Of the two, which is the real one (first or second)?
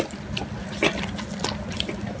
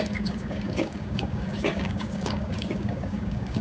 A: first